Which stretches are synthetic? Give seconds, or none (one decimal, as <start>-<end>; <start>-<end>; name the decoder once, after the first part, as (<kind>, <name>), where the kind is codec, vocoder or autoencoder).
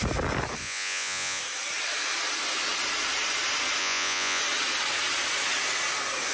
0.6-1.4 (vocoder, Vocos); 3.8-4.4